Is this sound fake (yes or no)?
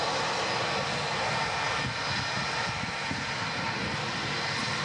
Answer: no